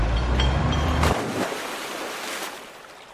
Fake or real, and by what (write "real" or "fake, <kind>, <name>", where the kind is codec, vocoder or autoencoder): fake, vocoder, BigVGAN v2